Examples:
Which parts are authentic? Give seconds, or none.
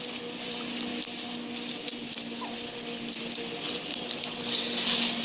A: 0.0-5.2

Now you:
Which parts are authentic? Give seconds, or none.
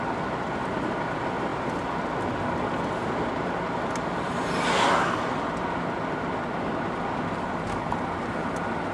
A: 0.0-8.9